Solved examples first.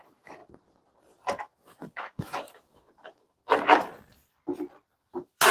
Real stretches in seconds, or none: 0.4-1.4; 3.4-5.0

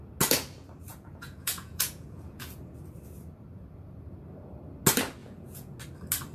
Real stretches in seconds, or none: 0.0-0.9; 2.6-5.2; 5.8-6.3

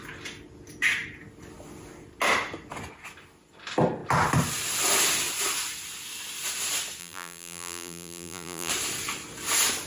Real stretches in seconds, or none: 0.0-7.0; 8.7-9.9

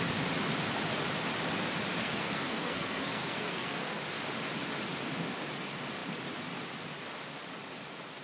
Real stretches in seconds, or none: 0.0-2.0; 4.0-8.2